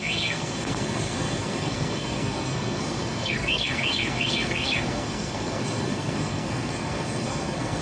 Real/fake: fake